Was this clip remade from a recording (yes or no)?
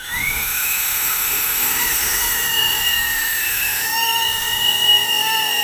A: yes